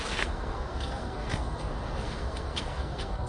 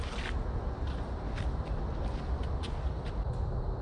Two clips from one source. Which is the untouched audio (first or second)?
second